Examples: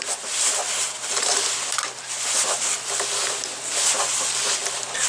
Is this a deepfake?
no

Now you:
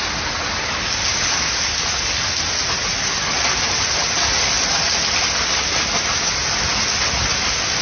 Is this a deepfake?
no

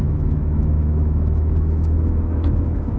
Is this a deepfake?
yes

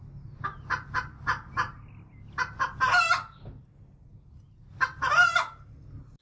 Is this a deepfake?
no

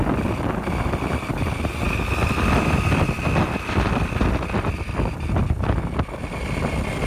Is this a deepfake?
no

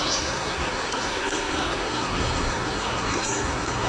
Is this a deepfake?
yes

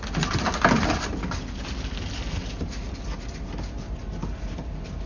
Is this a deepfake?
no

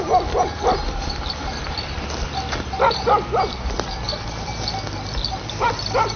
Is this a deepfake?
no